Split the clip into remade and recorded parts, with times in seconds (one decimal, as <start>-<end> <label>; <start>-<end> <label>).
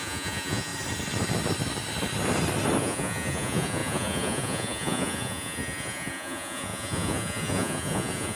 0.0-0.7 remade; 0.7-2.8 recorded; 2.8-8.4 remade